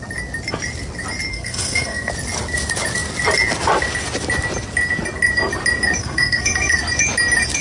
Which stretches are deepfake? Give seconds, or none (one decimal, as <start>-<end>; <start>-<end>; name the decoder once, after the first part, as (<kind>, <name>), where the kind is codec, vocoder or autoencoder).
1.3-2.1 (codec, SNAC); 6.0-6.8